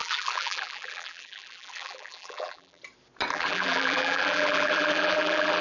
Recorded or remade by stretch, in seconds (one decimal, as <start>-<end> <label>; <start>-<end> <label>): 0.0-2.8 remade; 2.8-3.3 recorded; 3.3-5.6 remade